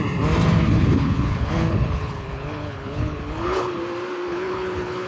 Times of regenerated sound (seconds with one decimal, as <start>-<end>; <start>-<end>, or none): 0.7-3.8; 4.3-5.1